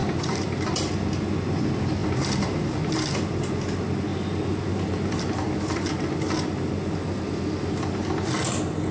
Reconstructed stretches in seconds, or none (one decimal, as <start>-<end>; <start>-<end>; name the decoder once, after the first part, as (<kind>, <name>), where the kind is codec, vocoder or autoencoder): 0.0-0.7 (vocoder, BigVGAN v2); 2.0-3.5; 4.1-8.1